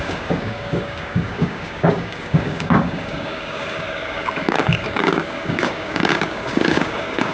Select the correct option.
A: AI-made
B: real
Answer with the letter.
A